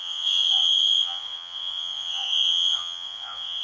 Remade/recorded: remade